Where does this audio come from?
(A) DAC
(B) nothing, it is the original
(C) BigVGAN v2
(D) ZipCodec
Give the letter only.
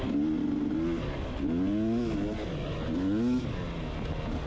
B